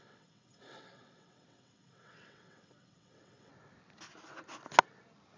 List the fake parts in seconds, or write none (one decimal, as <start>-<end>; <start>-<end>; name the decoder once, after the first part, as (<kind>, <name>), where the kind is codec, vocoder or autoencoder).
0.0-3.5 (vocoder, WaveNeXt)